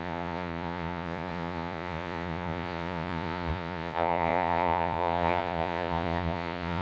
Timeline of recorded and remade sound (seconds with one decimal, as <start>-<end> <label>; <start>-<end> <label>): 0.0-6.8 remade